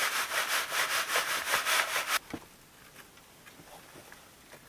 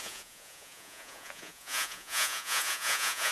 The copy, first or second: second